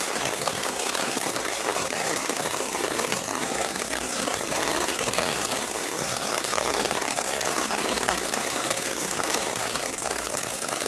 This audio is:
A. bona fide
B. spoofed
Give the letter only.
B